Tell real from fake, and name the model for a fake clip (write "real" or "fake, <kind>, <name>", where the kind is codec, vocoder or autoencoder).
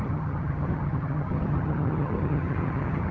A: fake, vocoder, HiFi-GAN